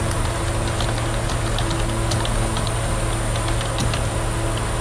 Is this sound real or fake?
real